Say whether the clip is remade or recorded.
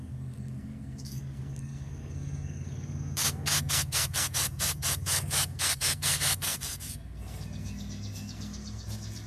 remade